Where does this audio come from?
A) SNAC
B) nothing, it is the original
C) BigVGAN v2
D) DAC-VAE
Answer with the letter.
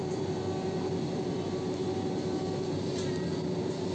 B